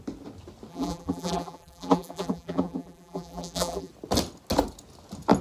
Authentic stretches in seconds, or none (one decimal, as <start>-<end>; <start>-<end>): 0.0-0.7; 3.9-5.4